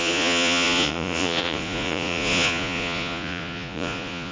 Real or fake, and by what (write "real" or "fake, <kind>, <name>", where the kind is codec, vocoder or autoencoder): fake, vocoder, Vocos